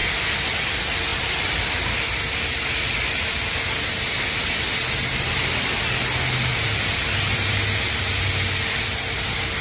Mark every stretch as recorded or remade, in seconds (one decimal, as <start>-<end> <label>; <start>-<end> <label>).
0.0-0.7 remade; 0.7-1.1 recorded; 1.1-5.7 remade; 5.7-9.6 recorded